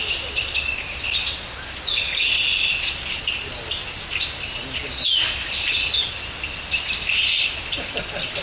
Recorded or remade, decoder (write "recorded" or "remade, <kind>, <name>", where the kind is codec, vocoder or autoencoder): recorded